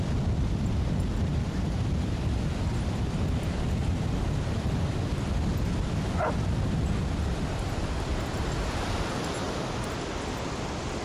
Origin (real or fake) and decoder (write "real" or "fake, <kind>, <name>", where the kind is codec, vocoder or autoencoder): real